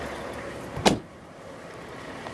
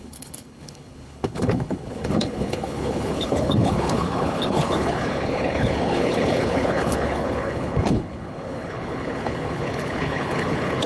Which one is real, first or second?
first